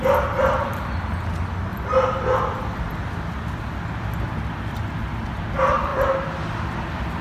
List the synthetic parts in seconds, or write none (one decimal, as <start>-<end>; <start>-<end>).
0.4-1.0